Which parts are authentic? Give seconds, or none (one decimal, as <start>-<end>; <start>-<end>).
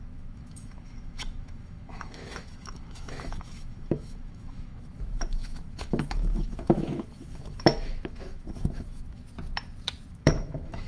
9.2-10.1